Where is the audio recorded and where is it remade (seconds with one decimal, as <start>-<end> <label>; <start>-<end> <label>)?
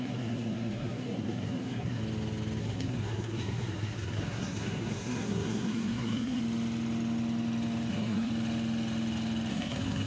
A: 0.0-2.0 remade; 2.0-2.6 recorded; 2.6-6.4 remade; 6.4-7.9 recorded; 7.9-8.3 remade; 8.3-9.5 recorded; 9.5-10.1 remade